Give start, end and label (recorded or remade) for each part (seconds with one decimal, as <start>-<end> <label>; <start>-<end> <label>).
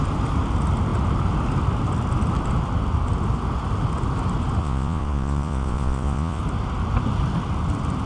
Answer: 0.0-4.6 recorded; 4.6-6.4 remade; 6.4-8.1 recorded